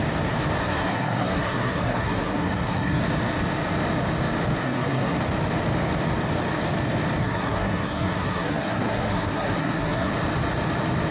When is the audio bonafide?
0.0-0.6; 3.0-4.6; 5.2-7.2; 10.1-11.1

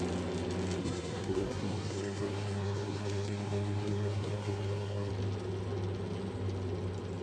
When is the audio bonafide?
0.0-0.8; 5.1-7.2

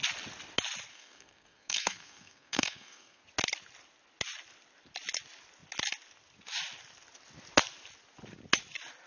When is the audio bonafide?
0.0-0.9; 3.2-9.1